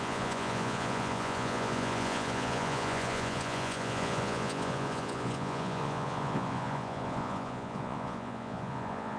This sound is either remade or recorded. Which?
remade